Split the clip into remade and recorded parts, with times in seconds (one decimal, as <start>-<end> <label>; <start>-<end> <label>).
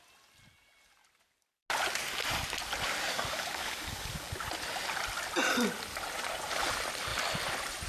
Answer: 0.0-3.1 recorded; 3.1-4.3 remade; 4.3-7.9 recorded